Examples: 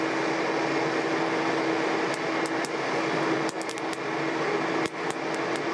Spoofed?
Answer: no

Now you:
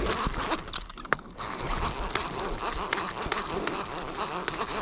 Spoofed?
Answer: no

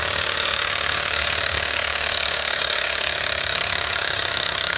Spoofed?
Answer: yes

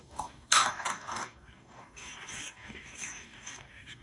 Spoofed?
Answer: yes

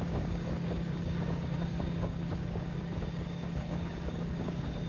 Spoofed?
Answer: yes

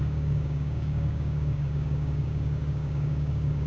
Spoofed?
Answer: yes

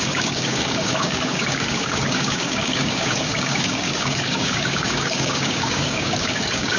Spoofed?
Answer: yes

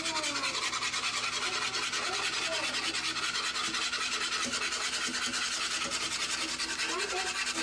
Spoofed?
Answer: no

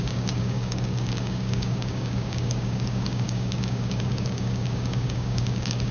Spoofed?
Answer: yes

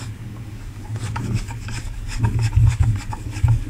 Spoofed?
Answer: yes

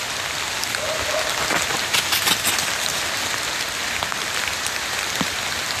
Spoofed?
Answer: no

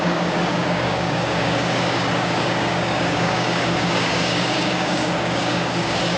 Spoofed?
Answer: yes